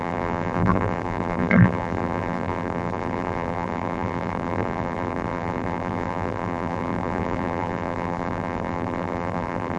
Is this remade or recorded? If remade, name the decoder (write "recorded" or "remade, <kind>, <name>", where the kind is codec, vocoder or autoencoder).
remade, vocoder, BigVGAN v2